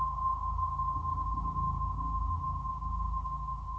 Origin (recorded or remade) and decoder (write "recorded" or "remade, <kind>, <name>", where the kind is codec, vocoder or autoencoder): recorded